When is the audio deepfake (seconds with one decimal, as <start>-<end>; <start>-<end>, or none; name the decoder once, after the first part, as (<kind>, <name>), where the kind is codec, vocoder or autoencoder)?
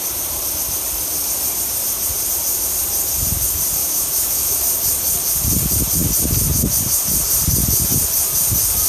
3.8-4.6 (autoencoder, DAC-VAE)